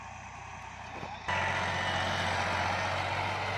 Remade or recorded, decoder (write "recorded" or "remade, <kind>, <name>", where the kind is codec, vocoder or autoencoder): recorded